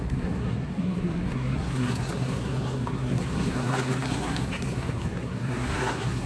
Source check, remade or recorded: remade